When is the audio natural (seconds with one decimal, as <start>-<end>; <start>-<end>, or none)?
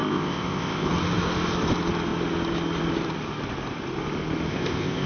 0.9-4.5